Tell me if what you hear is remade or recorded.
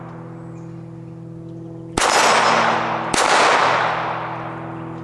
recorded